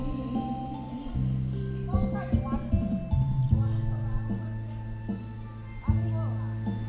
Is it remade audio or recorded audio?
recorded